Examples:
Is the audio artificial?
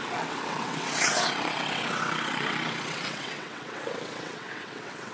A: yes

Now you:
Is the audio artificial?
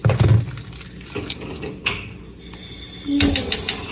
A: no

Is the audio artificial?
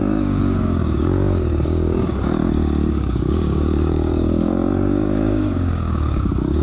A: yes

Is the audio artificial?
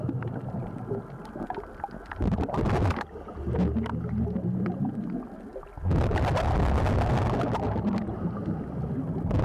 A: no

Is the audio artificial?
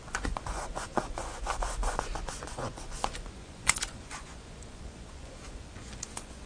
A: yes